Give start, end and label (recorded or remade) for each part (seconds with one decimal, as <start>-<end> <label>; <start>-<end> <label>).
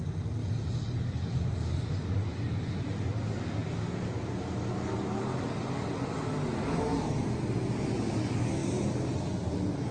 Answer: 0.0-9.9 recorded